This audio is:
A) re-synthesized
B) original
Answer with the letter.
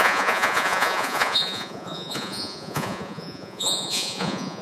A